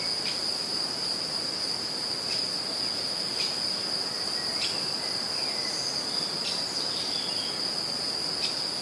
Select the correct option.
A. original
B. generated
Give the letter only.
A